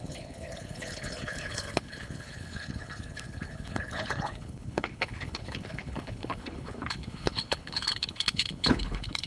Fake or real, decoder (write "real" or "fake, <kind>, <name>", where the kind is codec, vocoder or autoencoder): fake, codec, HILCodec